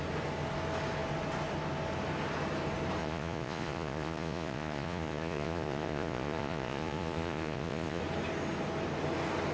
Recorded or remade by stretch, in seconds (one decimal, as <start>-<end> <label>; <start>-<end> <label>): 0.0-3.0 recorded; 3.0-8.0 remade; 8.0-9.5 recorded